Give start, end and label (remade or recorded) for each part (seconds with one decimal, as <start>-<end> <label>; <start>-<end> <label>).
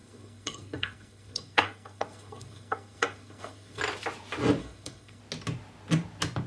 0.0-3.8 remade; 3.8-4.6 recorded; 4.6-5.2 remade; 5.2-6.5 recorded